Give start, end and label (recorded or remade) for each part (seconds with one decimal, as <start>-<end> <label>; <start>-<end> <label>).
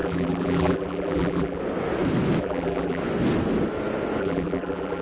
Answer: 0.0-1.6 remade; 1.6-2.4 recorded; 2.4-3.0 remade; 3.0-4.2 recorded; 4.2-5.0 remade